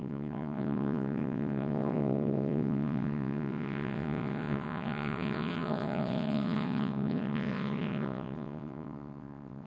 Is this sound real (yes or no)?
no